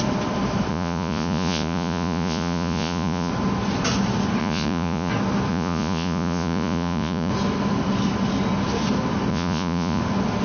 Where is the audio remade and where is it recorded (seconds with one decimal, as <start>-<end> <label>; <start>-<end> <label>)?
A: 0.0-0.7 recorded; 0.7-3.3 remade; 3.3-4.4 recorded; 4.4-5.1 remade; 5.1-5.5 recorded; 5.5-7.3 remade; 7.3-9.3 recorded; 9.3-10.0 remade; 10.0-10.4 recorded

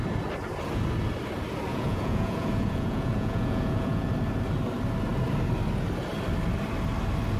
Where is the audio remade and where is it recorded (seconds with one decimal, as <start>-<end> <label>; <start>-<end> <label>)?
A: 0.0-1.7 recorded; 1.7-4.1 remade; 4.1-7.4 recorded

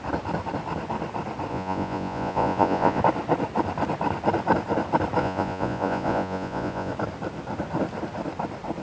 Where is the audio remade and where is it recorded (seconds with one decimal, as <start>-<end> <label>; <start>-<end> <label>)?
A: 0.0-1.5 recorded; 1.5-3.0 remade; 3.0-5.2 recorded; 5.2-6.9 remade; 6.9-8.8 recorded

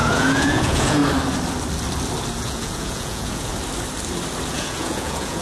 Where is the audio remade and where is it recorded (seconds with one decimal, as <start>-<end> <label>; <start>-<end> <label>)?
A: 0.0-1.0 remade; 1.0-2.4 recorded; 2.4-3.5 remade; 3.5-4.5 recorded; 4.5-5.4 remade

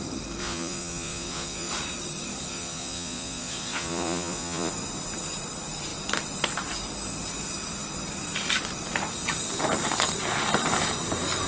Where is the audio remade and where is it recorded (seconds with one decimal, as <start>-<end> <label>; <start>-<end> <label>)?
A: 0.0-0.4 recorded; 0.4-1.7 remade; 1.7-2.5 recorded; 2.5-4.7 remade; 4.7-11.5 recorded